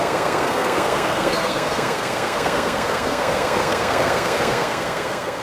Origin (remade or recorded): remade